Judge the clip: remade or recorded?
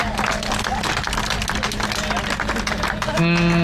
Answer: recorded